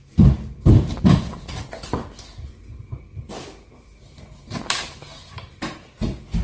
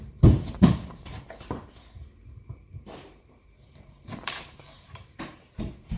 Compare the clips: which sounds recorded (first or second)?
first